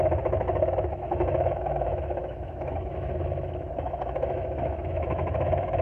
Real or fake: fake